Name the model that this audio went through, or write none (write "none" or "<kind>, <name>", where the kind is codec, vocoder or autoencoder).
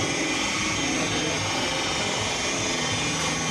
none